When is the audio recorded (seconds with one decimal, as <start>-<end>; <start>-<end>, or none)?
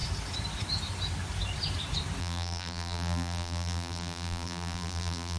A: 0.0-2.2